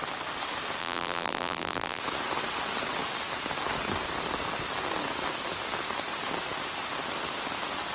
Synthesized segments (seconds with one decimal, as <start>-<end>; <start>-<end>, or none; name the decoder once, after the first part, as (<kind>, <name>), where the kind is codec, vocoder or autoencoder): 0.8-2.0 (vocoder, BigVGAN v2)